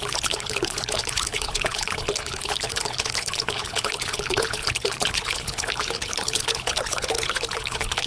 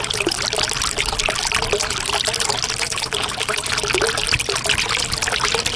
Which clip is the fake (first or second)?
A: first